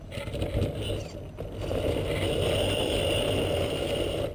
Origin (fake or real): real